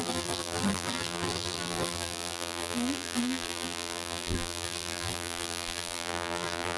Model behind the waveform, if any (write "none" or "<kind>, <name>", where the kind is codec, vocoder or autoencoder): vocoder, BigVGAN v2